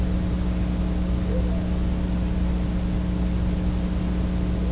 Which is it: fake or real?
real